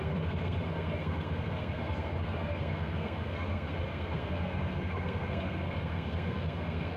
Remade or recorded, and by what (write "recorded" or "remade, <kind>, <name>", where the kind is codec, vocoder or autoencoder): remade, codec, SNAC